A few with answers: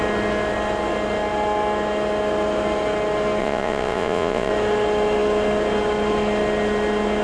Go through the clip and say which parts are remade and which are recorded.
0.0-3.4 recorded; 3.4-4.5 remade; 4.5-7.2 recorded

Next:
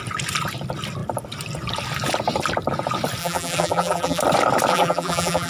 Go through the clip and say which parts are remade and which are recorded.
0.0-3.2 recorded; 3.2-4.2 remade; 4.2-4.7 recorded; 4.7-5.5 remade

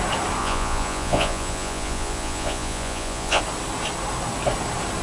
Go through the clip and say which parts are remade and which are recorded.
0.0-0.4 recorded; 0.4-3.4 remade; 3.4-5.0 recorded